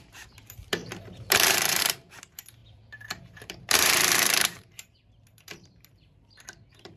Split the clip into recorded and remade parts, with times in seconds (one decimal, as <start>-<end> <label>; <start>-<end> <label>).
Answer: 0.0-7.0 remade